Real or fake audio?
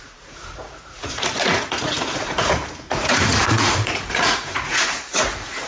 fake